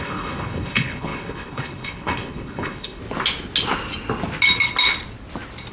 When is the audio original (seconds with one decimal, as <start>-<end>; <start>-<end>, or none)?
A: 3.0-5.7